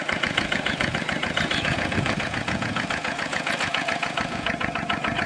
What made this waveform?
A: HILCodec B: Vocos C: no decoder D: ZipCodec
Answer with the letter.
B